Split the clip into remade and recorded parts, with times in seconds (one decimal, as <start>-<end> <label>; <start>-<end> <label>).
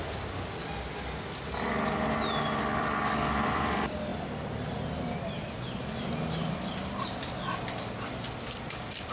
0.0-9.1 recorded